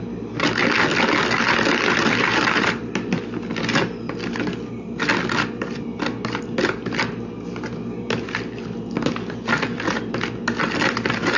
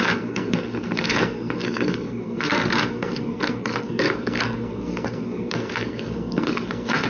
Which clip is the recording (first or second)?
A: first